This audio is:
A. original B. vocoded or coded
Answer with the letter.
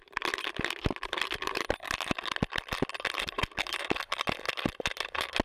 A